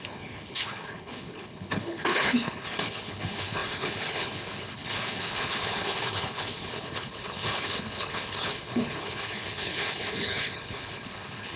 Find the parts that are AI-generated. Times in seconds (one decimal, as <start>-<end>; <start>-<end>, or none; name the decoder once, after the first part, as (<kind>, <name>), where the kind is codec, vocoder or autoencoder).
0.0-11.6 (codec, HILCodec)